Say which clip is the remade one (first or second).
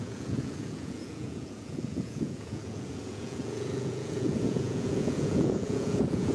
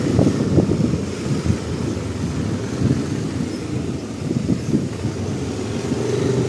first